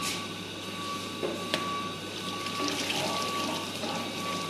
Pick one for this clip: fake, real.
real